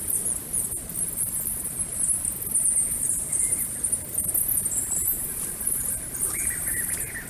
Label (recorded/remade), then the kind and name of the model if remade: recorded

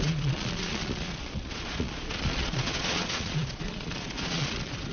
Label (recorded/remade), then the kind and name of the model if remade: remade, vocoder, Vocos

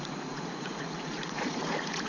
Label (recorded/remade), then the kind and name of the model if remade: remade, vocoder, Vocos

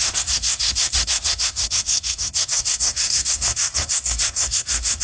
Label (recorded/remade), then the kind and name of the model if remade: remade, codec, SNAC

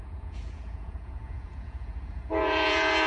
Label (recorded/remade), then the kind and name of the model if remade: remade, vocoder, Vocos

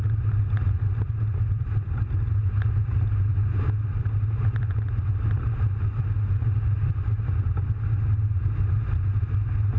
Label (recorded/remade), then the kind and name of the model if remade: recorded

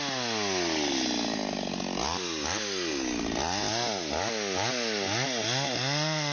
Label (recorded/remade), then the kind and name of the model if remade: recorded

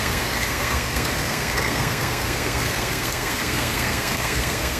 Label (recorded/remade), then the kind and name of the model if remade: remade, codec, SNAC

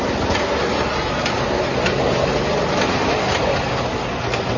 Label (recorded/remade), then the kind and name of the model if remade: recorded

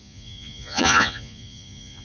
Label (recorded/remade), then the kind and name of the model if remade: remade, vocoder, Vocos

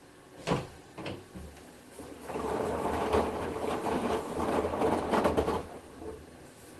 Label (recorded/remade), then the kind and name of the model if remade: recorded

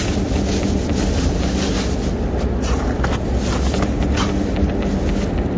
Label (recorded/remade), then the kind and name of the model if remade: recorded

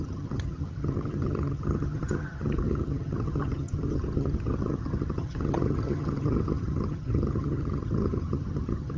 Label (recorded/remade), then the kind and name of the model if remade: remade, vocoder, HiFi-GAN